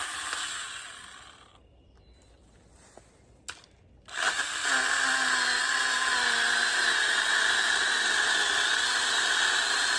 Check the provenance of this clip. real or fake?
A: real